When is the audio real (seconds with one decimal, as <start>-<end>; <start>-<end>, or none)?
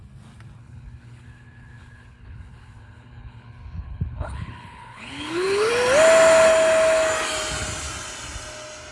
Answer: 0.0-0.6; 5.7-8.9